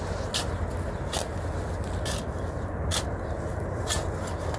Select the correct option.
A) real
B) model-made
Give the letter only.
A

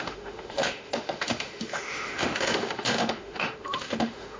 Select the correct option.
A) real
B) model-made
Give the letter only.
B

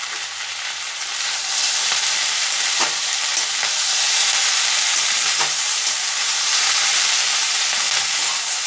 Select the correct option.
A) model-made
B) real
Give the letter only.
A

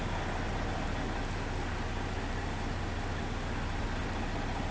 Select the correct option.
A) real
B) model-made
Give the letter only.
A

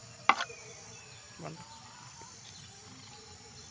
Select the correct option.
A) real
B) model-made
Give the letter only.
A